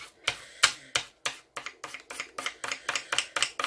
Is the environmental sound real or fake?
real